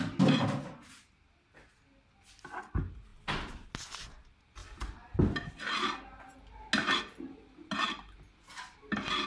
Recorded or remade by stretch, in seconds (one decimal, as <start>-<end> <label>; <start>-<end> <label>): 0.0-9.3 recorded